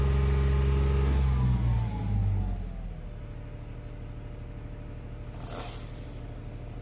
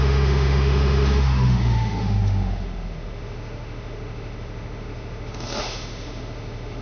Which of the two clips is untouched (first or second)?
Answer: first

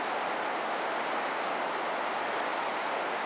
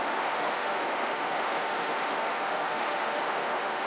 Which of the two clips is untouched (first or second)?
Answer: first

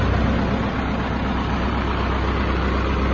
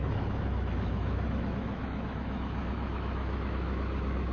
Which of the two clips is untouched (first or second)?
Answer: first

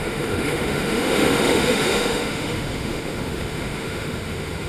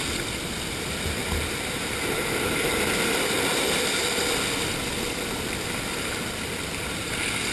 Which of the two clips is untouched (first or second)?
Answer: second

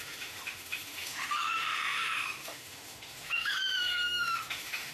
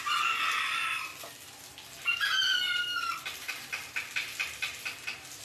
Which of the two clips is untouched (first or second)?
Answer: second